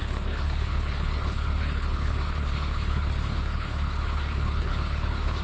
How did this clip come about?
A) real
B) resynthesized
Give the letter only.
B